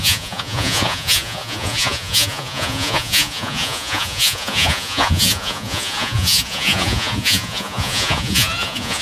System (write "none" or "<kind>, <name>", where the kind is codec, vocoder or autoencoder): vocoder, Vocos